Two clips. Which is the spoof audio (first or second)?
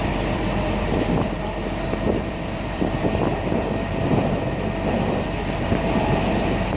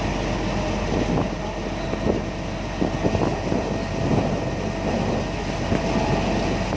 first